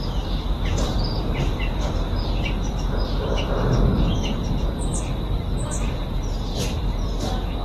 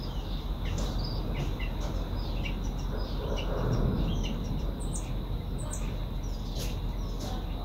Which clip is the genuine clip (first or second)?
second